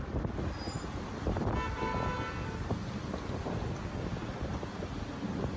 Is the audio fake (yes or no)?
no